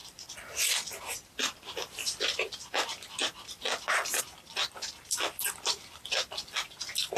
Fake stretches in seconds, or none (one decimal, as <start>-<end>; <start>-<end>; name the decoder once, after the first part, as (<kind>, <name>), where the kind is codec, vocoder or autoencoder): none